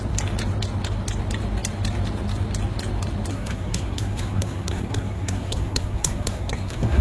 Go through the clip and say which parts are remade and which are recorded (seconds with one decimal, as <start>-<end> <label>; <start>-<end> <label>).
0.0-3.3 recorded; 3.3-7.0 remade